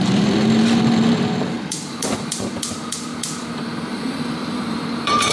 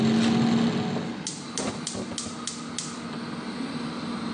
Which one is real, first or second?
second